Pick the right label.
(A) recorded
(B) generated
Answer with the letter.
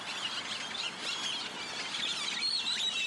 A